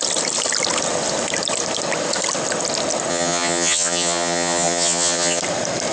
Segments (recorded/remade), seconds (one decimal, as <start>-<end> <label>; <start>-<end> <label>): 0.0-3.1 recorded; 3.1-5.4 remade; 5.4-5.9 recorded